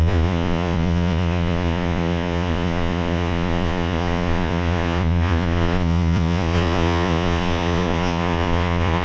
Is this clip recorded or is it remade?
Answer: remade